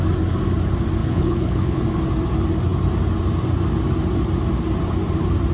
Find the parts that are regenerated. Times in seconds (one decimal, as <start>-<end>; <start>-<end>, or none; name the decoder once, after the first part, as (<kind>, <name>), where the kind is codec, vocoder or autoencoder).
1.0-1.8 (codec, HILCodec)